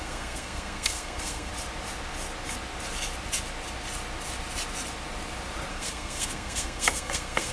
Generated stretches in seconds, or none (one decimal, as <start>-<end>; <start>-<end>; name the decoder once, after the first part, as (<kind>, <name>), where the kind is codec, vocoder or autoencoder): 0.0-1.5 (codec, SNAC); 5.7-7.5